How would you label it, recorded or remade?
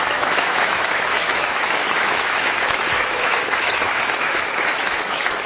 remade